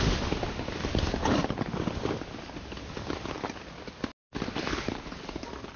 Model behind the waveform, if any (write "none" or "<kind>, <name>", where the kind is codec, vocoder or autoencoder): none